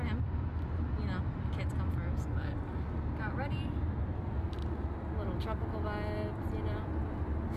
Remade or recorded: recorded